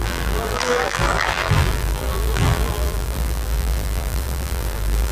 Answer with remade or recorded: remade